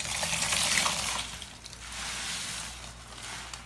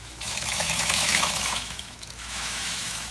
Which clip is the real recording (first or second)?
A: first